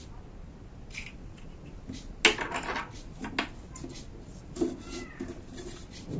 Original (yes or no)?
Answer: yes